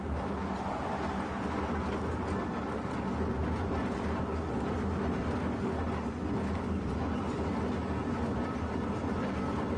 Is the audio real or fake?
real